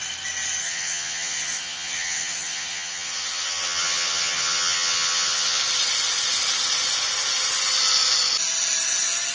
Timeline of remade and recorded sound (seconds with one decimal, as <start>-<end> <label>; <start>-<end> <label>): 0.0-0.6 recorded; 0.6-5.6 remade; 5.6-9.3 recorded